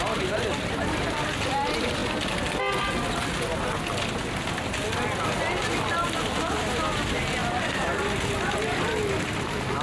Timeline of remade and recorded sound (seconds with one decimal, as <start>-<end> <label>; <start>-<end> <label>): 0.0-9.8 recorded